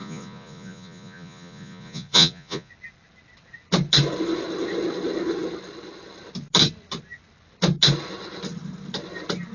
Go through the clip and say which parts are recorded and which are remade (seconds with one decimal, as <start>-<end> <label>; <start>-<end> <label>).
0.0-2.7 remade; 2.7-9.5 recorded